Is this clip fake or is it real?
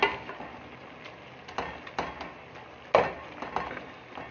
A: real